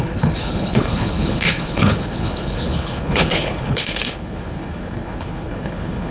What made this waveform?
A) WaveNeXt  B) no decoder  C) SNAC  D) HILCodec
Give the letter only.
D